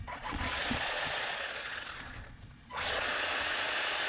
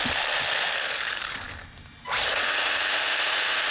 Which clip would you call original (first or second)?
second